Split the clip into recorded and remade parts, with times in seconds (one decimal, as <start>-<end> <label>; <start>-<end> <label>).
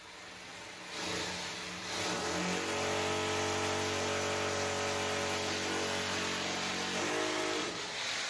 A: 0.0-8.3 recorded